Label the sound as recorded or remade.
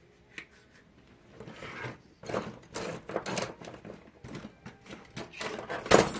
recorded